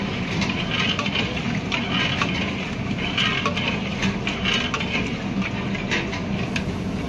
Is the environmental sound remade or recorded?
recorded